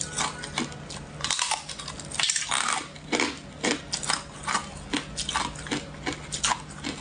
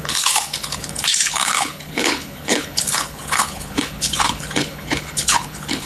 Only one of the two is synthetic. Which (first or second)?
second